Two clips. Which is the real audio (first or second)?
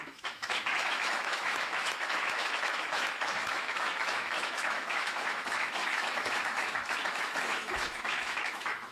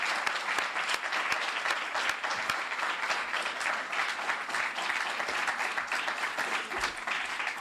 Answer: second